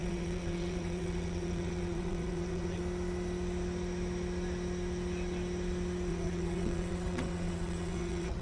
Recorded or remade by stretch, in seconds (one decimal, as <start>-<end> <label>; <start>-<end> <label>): 0.0-2.8 remade; 2.8-6.1 recorded; 6.1-8.4 remade